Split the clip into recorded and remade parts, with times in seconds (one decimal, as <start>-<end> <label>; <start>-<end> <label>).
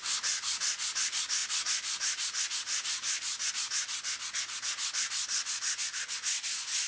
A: 0.0-1.4 recorded; 1.4-3.5 remade; 3.5-6.9 recorded